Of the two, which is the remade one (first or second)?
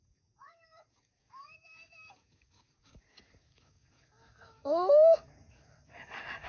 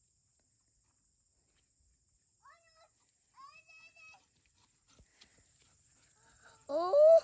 first